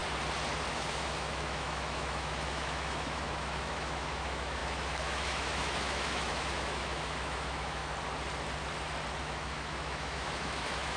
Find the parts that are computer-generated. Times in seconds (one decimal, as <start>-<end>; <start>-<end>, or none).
0.7-7.8; 9.2-11.0